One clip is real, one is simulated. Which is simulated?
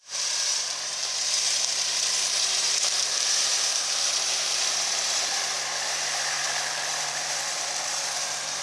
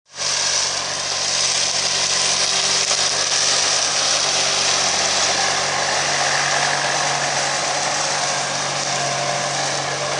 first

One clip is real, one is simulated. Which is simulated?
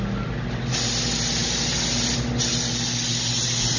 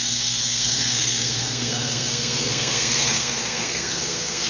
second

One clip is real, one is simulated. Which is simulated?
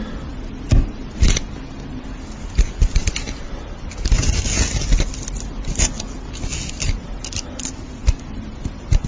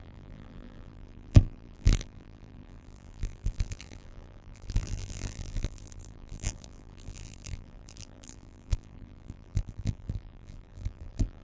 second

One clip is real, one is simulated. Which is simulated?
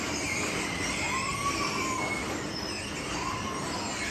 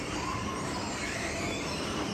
second